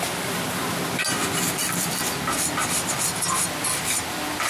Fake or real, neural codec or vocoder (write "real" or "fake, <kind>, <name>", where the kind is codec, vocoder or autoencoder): real